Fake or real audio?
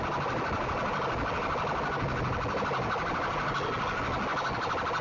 real